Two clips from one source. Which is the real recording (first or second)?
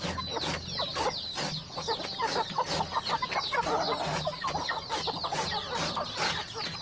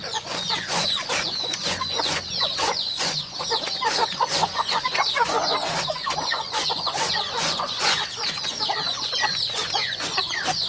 first